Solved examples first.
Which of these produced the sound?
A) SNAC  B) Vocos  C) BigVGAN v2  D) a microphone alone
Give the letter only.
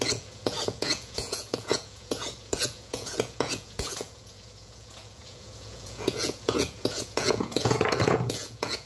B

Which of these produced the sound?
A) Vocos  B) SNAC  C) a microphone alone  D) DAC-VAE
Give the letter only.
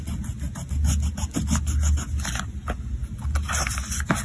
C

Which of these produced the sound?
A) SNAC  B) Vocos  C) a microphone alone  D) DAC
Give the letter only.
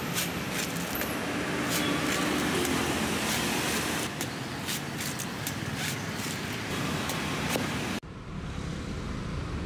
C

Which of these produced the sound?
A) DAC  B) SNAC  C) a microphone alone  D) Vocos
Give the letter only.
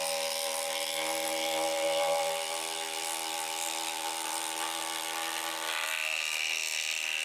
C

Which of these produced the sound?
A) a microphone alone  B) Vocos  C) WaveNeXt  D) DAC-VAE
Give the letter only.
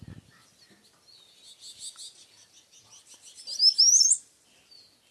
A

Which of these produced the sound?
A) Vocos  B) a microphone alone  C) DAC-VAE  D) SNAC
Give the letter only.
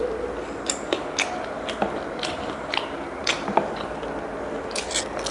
B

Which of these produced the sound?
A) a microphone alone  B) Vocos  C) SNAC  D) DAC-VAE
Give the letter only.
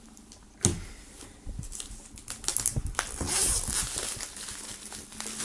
A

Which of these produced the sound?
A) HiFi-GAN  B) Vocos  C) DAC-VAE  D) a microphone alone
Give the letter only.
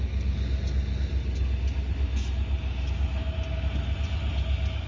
D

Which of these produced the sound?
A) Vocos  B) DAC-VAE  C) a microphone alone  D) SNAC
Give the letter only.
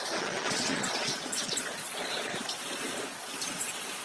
A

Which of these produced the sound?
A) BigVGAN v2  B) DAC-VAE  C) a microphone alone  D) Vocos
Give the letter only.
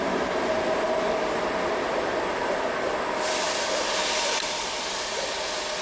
C